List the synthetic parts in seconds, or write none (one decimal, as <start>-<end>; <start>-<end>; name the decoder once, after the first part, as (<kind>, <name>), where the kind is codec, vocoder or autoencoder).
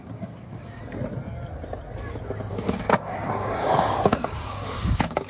0.0-0.8 (codec, DAC); 2.5-5.3